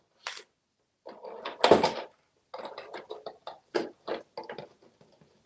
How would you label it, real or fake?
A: real